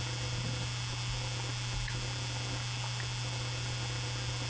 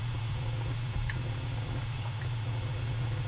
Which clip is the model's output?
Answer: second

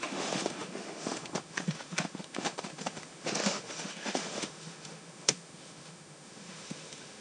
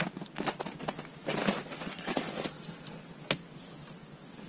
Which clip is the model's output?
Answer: first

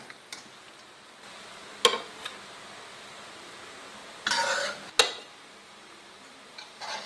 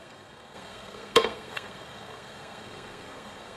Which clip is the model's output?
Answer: second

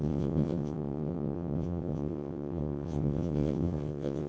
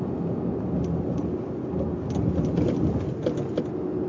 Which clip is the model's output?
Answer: first